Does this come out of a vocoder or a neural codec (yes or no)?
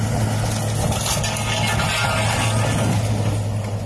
no